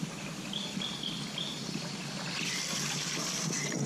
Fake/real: real